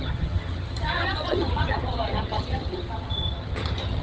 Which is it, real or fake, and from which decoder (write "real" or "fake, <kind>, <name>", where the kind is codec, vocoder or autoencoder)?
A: fake, vocoder, HiFi-GAN